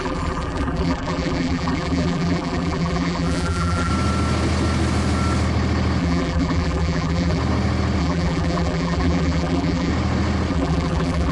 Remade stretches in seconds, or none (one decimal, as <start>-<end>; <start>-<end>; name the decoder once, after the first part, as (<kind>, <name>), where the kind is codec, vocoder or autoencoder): 0.0-3.9 (vocoder, BigVGAN v2); 6.0-7.4; 8.0-9.9; 10.5-11.3